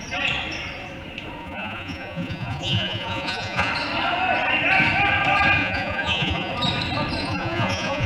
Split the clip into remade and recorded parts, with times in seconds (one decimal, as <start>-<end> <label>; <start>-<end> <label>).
0.0-1.4 recorded; 1.4-3.7 remade; 3.7-5.6 recorded; 5.6-6.5 remade; 6.5-7.2 recorded; 7.2-8.1 remade